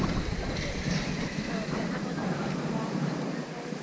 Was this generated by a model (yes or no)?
no